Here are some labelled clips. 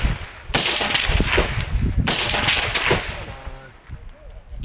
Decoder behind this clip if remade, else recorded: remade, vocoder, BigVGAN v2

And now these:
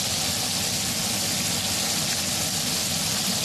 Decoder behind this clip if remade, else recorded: recorded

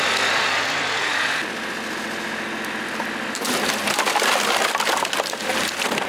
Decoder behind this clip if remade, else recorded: recorded